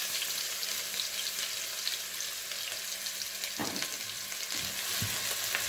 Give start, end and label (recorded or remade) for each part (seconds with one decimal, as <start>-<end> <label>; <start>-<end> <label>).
0.0-5.7 recorded